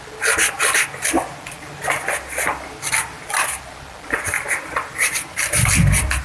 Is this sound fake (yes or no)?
no